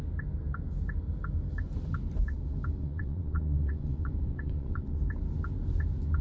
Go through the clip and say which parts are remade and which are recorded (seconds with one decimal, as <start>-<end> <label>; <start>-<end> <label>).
0.0-2.8 recorded; 2.8-5.0 remade; 5.0-6.2 recorded